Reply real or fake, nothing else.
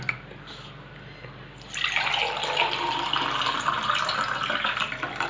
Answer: real